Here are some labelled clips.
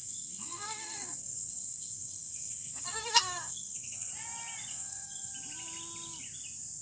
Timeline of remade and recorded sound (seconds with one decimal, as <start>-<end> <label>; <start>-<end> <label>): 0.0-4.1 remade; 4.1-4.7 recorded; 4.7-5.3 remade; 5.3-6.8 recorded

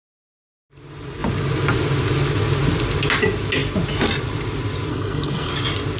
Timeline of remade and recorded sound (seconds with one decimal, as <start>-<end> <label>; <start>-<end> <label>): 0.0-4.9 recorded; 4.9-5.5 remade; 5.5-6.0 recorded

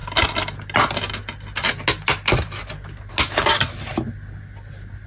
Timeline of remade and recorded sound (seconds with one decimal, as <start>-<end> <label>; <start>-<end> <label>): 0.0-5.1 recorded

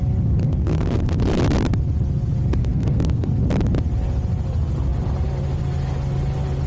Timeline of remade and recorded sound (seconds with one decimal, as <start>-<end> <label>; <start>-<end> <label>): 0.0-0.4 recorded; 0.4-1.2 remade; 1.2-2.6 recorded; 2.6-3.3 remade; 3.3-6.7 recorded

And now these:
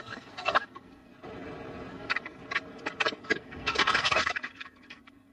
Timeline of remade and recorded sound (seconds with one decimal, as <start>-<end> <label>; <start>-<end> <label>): 0.0-1.1 remade; 1.1-1.9 recorded; 1.9-2.4 remade; 2.4-3.2 recorded; 3.2-5.3 remade